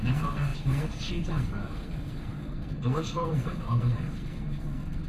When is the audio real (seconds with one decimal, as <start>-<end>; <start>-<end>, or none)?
none